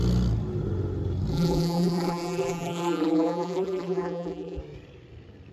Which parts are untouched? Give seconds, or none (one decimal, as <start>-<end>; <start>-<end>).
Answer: 0.0-1.3; 4.6-5.5